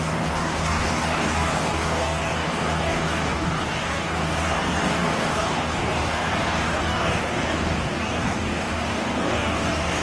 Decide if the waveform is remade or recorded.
remade